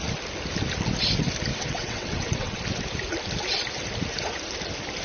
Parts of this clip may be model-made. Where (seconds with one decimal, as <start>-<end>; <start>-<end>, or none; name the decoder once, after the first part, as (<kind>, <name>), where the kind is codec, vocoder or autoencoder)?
1.5-2.6 (vocoder, WaveNeXt)